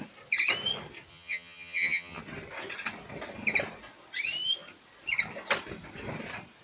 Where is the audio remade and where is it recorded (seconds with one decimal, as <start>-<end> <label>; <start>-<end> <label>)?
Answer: 0.0-1.1 recorded; 1.1-2.2 remade; 2.2-6.6 recorded